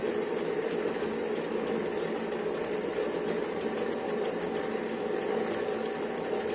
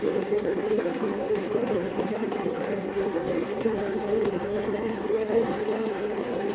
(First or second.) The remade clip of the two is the second